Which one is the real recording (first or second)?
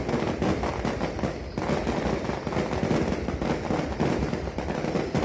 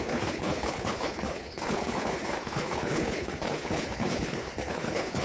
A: first